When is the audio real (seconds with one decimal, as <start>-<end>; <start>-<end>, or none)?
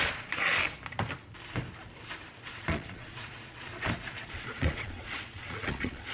0.6-2.4; 3.7-4.3